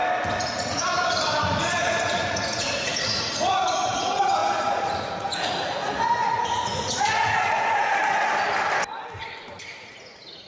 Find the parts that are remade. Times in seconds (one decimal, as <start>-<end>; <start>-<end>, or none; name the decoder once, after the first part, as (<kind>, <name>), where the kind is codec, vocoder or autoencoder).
0.6-8.0 (vocoder, Vocos); 9.8-10.5